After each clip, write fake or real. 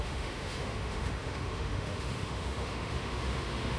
fake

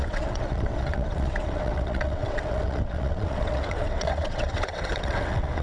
fake